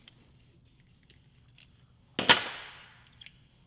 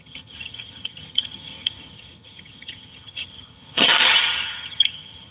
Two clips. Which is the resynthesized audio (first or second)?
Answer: second